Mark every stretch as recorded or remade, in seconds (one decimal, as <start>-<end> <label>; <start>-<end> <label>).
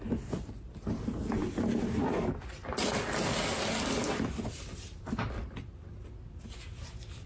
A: 0.0-7.3 recorded